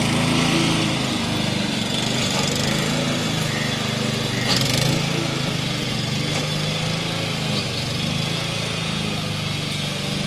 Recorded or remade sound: recorded